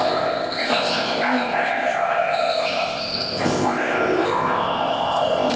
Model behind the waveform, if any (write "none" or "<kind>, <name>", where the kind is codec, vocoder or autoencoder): codec, ZipCodec